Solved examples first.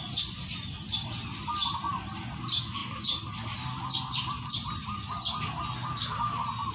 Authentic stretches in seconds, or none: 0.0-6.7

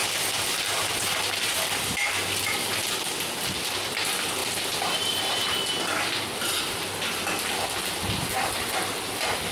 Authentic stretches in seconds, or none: 0.0-0.8; 2.8-4.0; 4.4-8.6

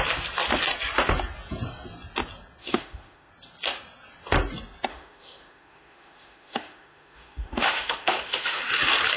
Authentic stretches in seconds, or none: 0.0-2.6; 3.3-4.9; 8.6-9.2

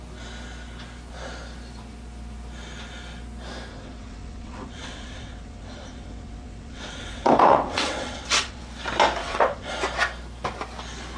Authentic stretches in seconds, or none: 0.0-3.7; 8.6-9.2; 9.7-11.2